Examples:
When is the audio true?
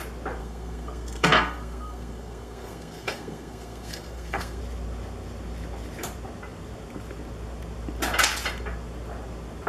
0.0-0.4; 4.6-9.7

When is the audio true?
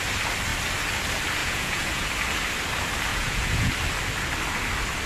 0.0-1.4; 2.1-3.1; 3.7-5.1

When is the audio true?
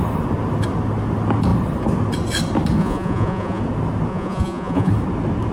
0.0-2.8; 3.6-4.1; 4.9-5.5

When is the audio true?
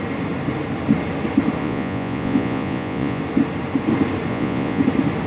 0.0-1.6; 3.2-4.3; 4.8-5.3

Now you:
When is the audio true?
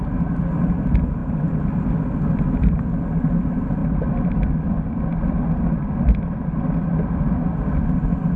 0.0-8.4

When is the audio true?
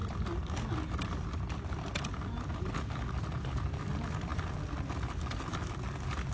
0.0-6.3